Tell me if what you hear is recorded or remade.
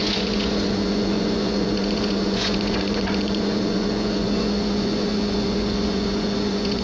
remade